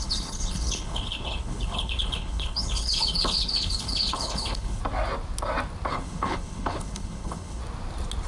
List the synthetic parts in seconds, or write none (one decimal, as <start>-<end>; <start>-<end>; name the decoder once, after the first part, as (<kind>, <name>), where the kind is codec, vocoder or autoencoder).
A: 0.0-4.8 (codec, HILCodec); 5.9-7.6